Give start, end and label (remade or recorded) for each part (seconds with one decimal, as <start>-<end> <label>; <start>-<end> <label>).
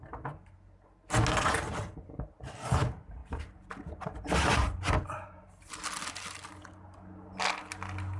0.0-3.2 recorded; 3.2-5.7 remade; 5.7-8.2 recorded